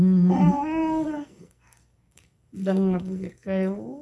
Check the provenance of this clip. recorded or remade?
remade